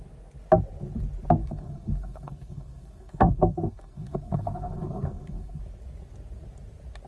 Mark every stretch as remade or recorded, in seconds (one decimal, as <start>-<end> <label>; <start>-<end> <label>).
0.0-1.4 recorded; 1.4-5.6 remade; 5.6-7.1 recorded